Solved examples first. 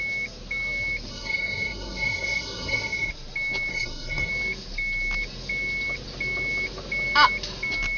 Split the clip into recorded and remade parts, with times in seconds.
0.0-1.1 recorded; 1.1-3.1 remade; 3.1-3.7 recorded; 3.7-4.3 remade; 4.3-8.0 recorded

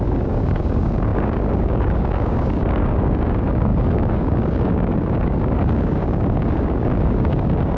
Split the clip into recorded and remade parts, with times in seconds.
0.0-7.8 remade

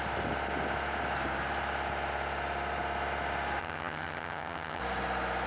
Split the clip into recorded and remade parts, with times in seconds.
0.0-3.6 recorded; 3.6-4.8 remade; 4.8-5.5 recorded

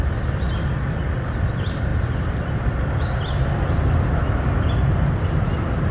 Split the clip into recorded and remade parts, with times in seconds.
0.0-5.9 recorded

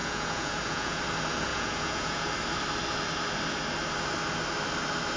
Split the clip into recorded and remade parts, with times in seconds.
0.0-1.0 remade; 1.0-1.5 recorded; 1.5-2.3 remade; 2.3-5.2 recorded

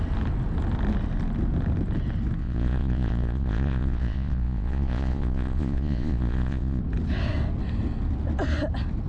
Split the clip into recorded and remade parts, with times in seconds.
0.0-2.4 recorded; 2.4-6.8 remade; 6.8-9.1 recorded